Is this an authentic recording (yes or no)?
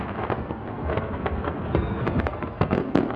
no